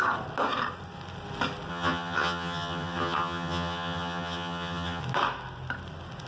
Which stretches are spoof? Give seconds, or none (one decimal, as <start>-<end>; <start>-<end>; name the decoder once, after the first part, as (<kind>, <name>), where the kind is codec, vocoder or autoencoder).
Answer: 1.7-5.0 (vocoder, HiFi-GAN)